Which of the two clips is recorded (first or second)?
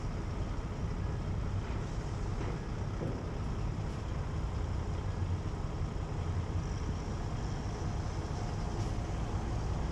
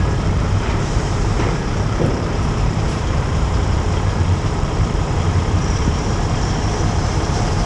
first